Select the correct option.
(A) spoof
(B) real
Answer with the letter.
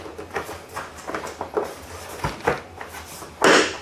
B